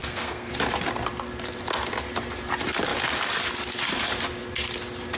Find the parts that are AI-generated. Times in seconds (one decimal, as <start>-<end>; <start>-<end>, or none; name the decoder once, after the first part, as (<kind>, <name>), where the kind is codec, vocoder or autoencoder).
0.0-0.5 (codec, SNAC)